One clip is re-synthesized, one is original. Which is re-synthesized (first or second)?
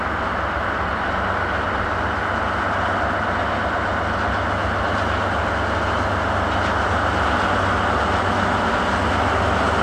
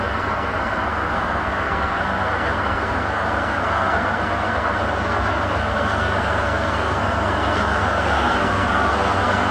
second